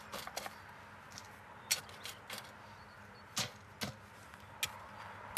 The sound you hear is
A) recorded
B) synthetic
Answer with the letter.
A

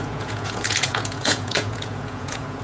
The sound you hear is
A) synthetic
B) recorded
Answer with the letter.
A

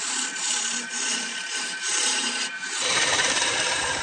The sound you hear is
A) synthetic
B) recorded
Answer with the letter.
A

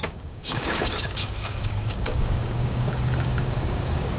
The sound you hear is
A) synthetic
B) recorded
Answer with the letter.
A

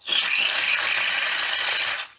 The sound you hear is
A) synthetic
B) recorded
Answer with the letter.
B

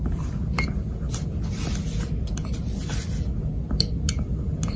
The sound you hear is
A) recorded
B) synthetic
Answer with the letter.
A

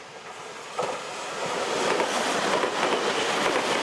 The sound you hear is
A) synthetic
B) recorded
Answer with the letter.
B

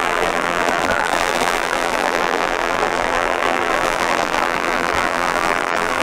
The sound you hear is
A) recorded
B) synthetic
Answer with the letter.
B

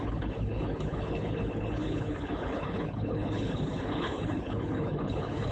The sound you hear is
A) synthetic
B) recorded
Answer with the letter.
A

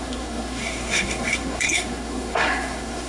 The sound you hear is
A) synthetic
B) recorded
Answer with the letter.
A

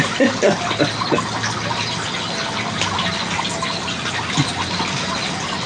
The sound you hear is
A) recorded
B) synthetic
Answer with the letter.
A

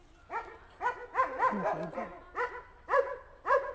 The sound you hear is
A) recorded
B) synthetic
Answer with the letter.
A